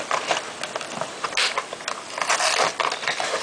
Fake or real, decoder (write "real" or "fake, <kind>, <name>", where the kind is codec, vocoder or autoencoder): real